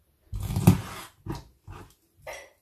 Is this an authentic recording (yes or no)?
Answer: yes